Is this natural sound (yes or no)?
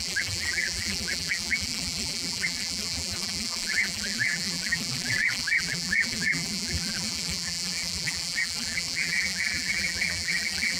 no